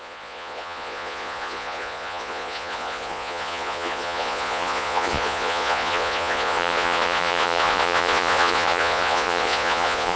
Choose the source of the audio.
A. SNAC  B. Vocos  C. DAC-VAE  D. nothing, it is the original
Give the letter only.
B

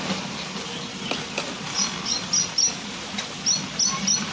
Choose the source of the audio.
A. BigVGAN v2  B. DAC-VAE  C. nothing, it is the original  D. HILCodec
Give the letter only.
C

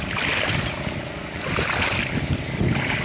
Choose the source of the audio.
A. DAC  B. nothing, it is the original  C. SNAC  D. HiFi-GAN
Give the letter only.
B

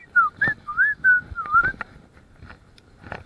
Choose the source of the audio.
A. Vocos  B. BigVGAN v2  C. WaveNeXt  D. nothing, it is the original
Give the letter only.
D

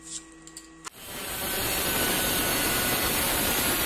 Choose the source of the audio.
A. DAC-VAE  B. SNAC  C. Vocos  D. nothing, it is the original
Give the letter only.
D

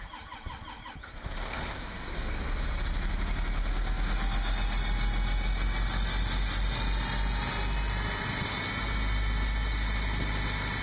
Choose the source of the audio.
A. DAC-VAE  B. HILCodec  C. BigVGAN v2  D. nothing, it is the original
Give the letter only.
D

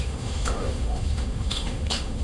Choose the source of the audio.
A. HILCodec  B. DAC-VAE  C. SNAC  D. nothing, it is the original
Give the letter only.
B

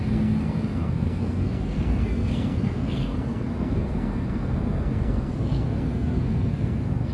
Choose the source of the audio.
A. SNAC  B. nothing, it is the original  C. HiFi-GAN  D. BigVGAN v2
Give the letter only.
A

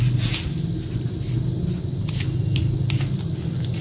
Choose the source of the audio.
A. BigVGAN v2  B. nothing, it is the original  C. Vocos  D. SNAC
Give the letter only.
B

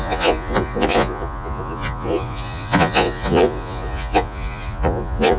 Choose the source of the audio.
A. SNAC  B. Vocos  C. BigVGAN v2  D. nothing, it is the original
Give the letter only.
B